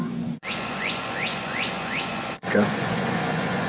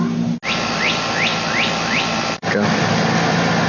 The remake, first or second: first